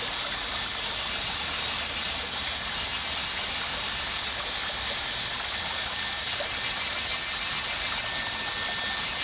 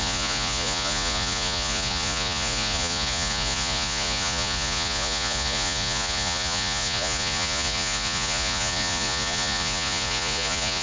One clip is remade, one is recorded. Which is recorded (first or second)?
first